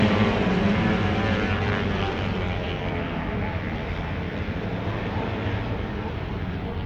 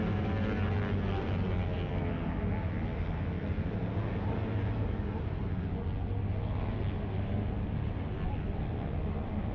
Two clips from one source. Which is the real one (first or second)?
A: second